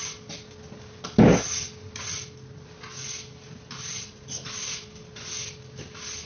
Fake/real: real